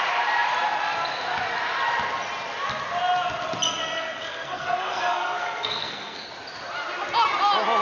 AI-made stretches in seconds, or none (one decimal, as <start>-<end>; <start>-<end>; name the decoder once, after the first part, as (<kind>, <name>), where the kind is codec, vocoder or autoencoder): 3.8-6.3 (codec, SNAC)

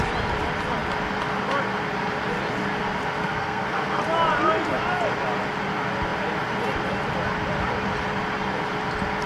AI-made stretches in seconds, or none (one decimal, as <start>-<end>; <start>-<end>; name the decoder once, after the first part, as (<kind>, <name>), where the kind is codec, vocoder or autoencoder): 3.2-4.0 (codec, SNAC)

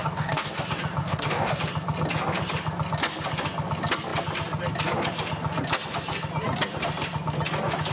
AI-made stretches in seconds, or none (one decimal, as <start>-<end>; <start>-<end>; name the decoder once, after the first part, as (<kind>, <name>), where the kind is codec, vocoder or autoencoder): 0.0-0.5 (codec, DAC); 1.0-1.6

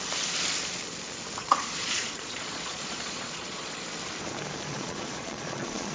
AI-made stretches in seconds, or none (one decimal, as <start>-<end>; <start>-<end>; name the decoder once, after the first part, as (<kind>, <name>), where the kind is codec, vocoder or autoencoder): 1.4-3.8 (vocoder, Vocos); 4.7-5.9

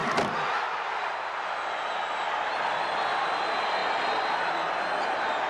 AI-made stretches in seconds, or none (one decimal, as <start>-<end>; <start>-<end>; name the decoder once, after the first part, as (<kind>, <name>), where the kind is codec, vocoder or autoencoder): 0.0-2.3 (vocoder, BigVGAN v2)

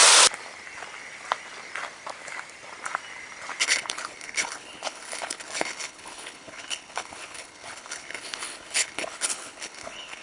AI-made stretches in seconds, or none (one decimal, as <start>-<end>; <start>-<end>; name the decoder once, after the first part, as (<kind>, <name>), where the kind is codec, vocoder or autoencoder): 3.6-10.2 (codec, HILCodec)